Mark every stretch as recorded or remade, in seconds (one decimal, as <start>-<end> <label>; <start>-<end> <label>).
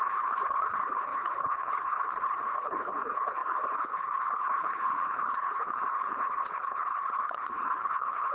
0.0-8.3 remade